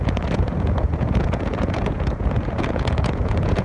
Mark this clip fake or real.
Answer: fake